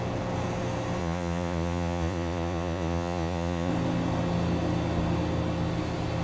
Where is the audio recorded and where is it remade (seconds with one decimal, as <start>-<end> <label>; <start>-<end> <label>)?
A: 0.0-1.0 recorded; 1.0-3.7 remade; 3.7-6.2 recorded